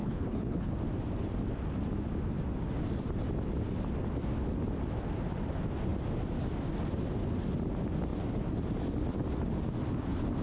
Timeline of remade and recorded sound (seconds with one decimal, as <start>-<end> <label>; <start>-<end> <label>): 0.0-0.7 remade; 0.7-10.4 recorded